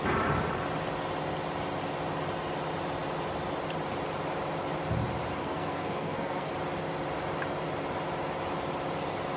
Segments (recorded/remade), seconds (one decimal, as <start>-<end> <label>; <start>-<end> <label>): 0.0-5.4 recorded; 5.4-6.5 remade; 6.5-9.4 recorded